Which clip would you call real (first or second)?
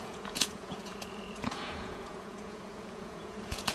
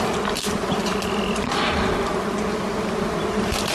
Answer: second